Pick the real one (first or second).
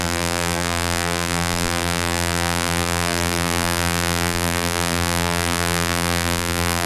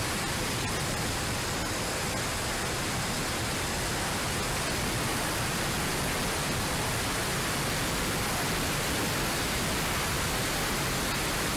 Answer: second